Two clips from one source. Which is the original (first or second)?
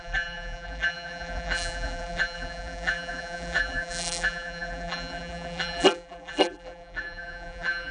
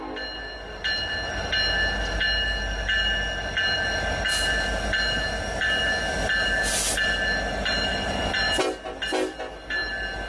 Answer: second